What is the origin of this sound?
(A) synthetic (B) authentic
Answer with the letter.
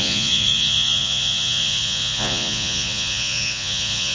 A